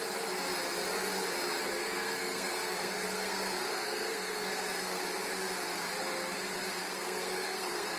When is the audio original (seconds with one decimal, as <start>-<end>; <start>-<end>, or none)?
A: 0.0-1.8; 5.0-6.8